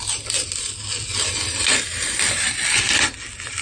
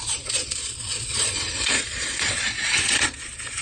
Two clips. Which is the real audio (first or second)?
first